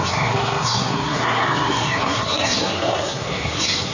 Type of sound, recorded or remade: remade